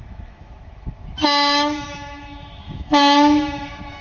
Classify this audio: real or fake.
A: fake